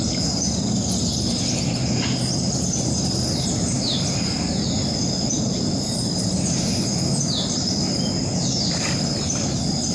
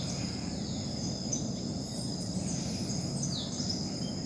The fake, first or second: first